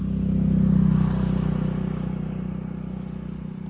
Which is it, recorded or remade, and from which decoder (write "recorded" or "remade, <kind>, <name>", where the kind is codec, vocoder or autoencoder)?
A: recorded